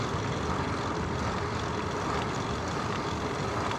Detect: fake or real real